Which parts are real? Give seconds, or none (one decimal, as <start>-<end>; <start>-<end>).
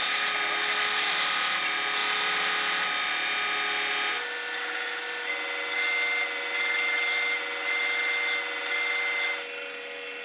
0.0-10.2